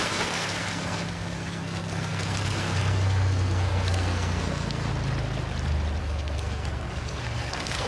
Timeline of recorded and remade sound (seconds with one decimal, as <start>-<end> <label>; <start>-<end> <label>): 0.0-4.9 remade; 4.9-6.0 recorded; 6.0-7.9 remade

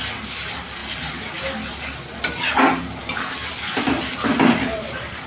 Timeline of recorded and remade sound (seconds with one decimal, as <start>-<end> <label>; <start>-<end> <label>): 0.0-5.3 recorded

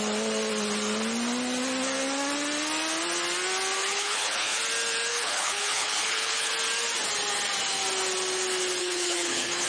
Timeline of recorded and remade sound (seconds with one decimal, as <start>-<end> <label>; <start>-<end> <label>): 0.0-3.8 recorded; 3.8-4.6 remade; 4.6-5.1 recorded; 5.1-6.5 remade; 6.5-8.8 recorded; 8.8-9.7 remade

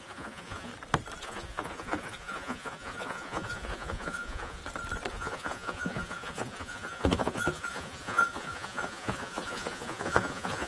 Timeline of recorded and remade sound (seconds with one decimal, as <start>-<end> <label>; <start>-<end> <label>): 0.0-0.7 remade; 0.7-1.2 recorded; 1.2-4.6 remade; 4.6-5.1 recorded; 5.1-10.7 remade

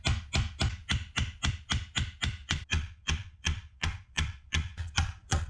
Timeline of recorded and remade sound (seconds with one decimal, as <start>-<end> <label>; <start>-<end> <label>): 0.0-2.4 recorded; 2.4-5.5 remade

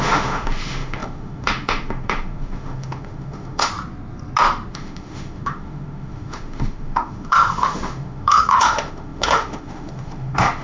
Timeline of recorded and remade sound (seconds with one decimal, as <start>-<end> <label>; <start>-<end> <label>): 0.0-3.7 remade; 3.7-4.7 recorded; 4.7-10.6 remade

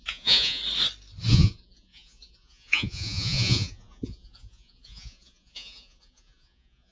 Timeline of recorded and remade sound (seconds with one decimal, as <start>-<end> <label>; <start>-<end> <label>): 0.0-0.6 remade; 0.6-1.3 recorded; 1.3-6.9 remade